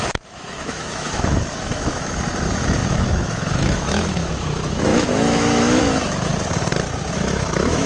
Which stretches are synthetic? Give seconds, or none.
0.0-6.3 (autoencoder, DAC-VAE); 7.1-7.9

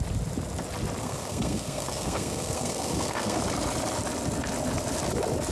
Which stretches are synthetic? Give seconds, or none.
1.0-3.4 (codec, SNAC)

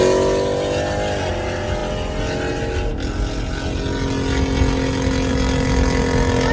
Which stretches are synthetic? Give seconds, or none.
none

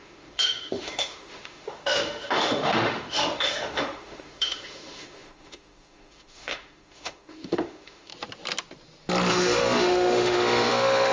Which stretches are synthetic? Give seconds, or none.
0.0-8.1 (autoencoder, DAC-VAE); 9.3-11.1